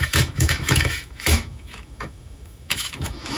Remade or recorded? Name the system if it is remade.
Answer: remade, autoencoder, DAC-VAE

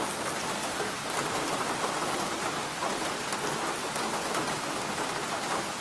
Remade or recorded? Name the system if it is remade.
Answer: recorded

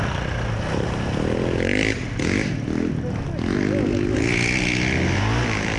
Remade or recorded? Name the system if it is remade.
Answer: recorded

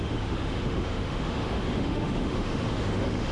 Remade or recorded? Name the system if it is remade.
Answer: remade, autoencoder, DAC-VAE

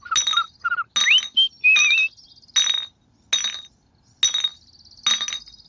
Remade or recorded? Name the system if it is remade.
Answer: recorded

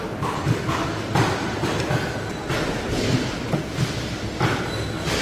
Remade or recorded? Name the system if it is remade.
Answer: recorded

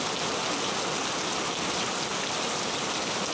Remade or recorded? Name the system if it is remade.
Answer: recorded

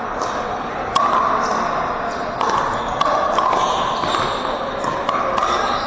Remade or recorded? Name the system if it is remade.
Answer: recorded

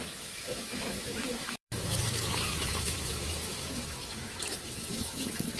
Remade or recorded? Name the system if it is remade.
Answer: remade, autoencoder, DAC-VAE